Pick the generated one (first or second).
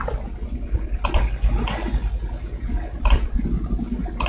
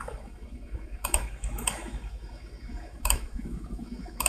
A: second